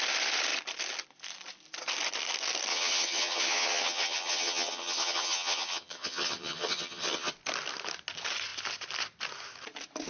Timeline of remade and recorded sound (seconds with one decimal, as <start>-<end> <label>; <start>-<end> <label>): 0.0-2.7 recorded; 2.7-7.3 remade; 7.3-10.1 recorded

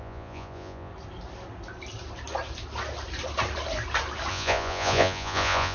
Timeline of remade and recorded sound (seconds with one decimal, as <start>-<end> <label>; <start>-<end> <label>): 0.0-0.9 remade; 0.9-4.3 recorded; 4.3-5.7 remade